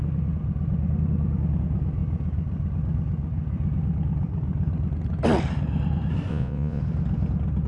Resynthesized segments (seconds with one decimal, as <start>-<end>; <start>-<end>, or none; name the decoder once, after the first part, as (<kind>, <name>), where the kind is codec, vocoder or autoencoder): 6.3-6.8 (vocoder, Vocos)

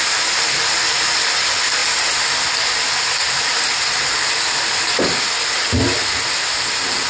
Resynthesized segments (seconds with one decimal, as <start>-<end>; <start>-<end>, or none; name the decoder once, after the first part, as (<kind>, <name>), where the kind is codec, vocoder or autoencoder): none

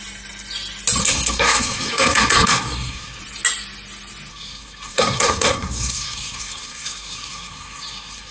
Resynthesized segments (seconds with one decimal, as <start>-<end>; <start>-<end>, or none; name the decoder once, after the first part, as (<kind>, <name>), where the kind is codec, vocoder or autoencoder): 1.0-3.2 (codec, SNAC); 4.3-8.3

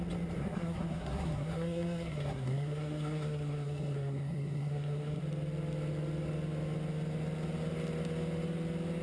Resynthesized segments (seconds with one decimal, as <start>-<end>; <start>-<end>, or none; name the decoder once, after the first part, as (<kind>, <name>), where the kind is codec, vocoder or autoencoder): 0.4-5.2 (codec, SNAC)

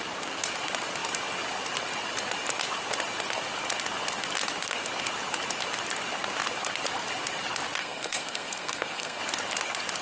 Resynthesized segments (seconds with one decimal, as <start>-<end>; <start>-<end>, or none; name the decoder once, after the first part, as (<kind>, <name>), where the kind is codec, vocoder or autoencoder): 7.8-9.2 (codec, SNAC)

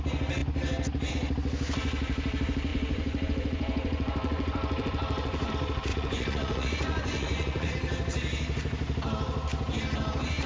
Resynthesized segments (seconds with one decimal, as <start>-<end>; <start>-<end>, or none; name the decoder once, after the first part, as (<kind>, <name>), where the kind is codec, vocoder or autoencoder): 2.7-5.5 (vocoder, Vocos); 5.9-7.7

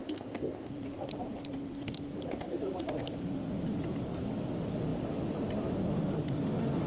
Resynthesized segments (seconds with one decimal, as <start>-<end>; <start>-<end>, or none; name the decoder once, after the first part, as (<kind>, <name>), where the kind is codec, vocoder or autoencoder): 0.0-0.7 (codec, ZipCodec)

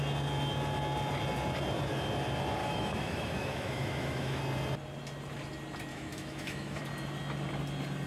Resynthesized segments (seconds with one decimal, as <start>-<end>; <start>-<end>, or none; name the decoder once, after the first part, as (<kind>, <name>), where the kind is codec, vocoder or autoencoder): 2.6-4.4 (autoencoder, DAC-VAE); 5.9-6.8